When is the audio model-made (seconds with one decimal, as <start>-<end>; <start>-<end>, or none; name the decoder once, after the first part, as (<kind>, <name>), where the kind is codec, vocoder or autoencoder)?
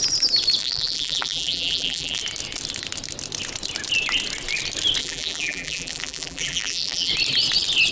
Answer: 0.6-2.2 (vocoder, BigVGAN v2); 5.0-7.1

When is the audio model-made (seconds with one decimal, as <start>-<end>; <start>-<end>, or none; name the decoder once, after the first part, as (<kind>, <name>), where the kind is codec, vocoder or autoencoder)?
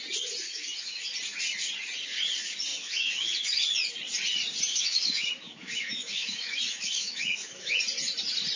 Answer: 0.5-1.0 (autoencoder, DAC-VAE); 2.7-3.6; 4.7-7.8